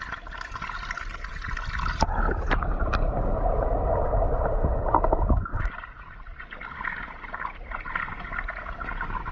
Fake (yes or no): no